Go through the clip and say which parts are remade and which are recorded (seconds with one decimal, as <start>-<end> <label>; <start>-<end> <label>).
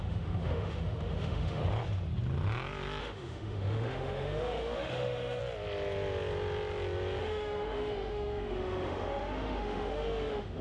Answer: 0.0-1.6 remade; 1.6-3.0 recorded; 3.0-5.4 remade; 5.4-7.2 recorded; 7.2-10.6 remade